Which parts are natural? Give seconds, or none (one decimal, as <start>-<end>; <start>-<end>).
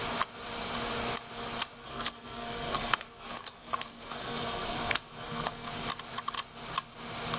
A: 0.0-1.8; 5.7-7.4